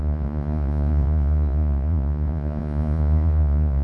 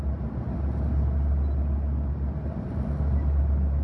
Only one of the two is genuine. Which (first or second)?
second